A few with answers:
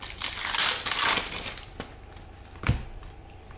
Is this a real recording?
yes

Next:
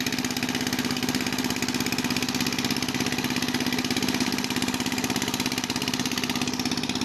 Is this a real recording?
yes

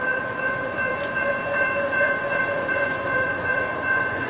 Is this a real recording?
no